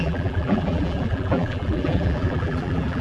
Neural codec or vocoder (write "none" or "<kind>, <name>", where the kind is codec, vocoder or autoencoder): vocoder, BigVGAN v2